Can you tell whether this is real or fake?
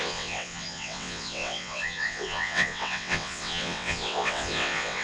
fake